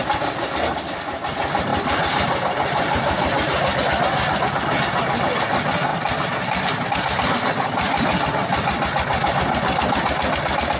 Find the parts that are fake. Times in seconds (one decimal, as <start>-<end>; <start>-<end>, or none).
1.7-3.8; 5.9-6.9